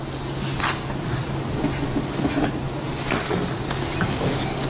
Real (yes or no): yes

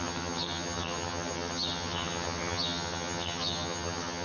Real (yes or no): no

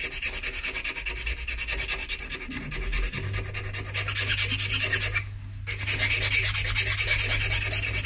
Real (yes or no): yes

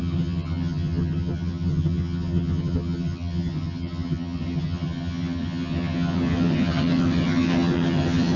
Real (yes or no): no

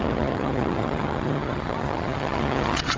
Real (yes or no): no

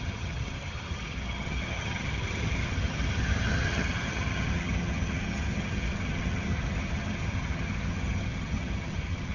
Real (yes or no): no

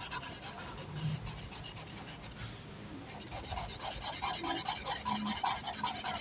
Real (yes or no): yes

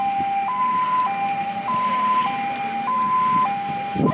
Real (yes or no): yes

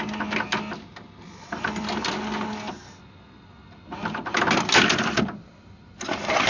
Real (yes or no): yes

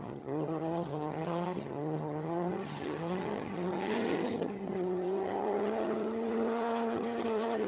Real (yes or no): no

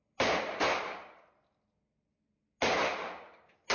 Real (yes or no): yes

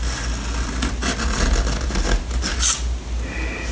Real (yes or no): yes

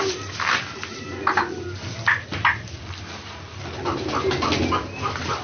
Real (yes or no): yes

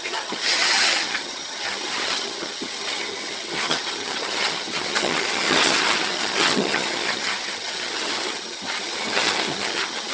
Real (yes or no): no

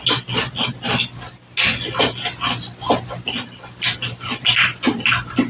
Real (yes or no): yes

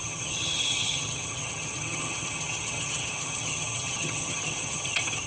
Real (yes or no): no